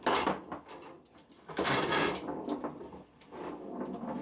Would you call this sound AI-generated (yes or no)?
no